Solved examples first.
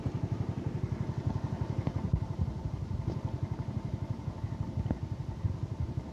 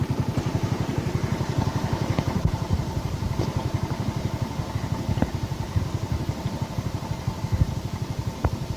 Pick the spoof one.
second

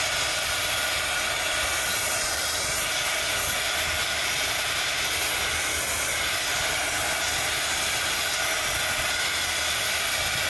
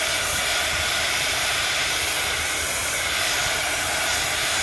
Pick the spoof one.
second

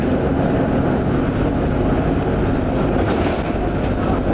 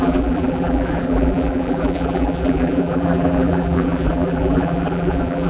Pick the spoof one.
second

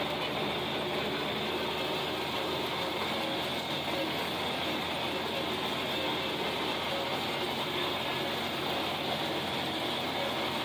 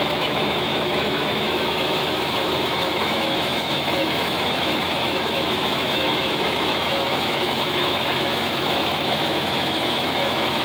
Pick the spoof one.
second